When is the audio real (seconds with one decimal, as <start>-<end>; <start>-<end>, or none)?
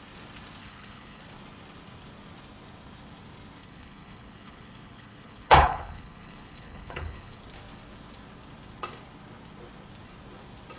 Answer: 0.0-0.6; 1.2-3.6; 7.4-10.8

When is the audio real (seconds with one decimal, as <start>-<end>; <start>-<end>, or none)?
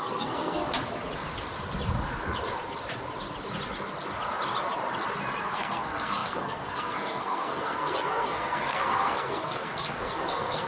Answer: 0.6-5.4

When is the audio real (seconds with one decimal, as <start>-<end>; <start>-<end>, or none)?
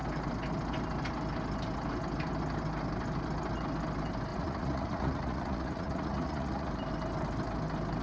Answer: 0.0-4.3; 6.7-8.0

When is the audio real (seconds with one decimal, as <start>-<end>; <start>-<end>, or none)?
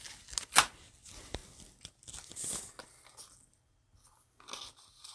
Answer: 0.0-5.1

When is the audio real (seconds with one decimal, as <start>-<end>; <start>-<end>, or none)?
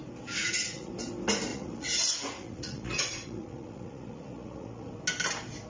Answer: 0.0-0.4; 0.9-1.5; 4.9-5.7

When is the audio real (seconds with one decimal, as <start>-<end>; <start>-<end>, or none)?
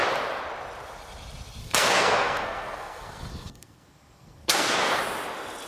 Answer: 0.0-1.6; 5.0-5.7